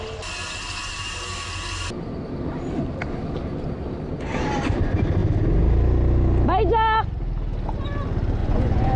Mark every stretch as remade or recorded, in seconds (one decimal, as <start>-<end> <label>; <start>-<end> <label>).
0.0-8.4 recorded; 8.4-9.0 remade